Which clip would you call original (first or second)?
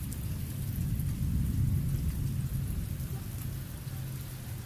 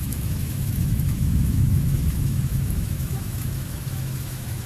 first